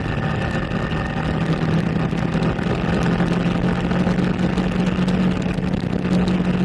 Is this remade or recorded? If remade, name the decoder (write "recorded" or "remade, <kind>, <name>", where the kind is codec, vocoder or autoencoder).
recorded